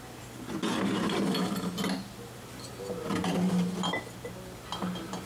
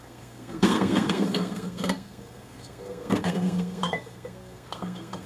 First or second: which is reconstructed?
second